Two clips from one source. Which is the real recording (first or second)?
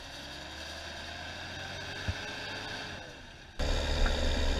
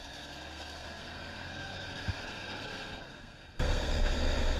first